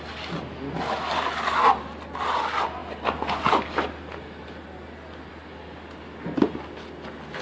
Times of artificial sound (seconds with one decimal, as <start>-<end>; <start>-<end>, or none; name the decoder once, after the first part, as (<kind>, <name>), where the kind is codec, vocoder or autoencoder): none